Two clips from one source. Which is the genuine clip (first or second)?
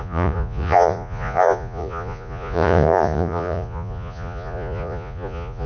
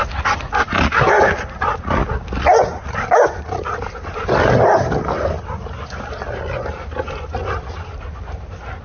second